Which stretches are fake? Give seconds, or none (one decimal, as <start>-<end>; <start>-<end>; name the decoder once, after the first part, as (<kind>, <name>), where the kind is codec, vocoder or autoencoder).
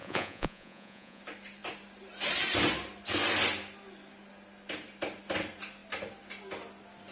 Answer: 0.0-1.2 (vocoder, Vocos)